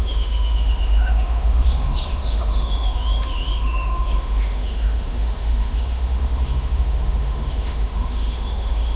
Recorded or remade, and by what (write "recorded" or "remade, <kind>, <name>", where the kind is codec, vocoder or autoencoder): remade, autoencoder, DAC-VAE